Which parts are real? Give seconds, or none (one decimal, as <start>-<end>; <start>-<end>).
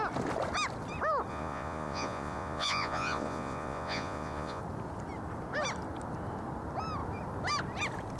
0.0-1.3; 4.6-8.2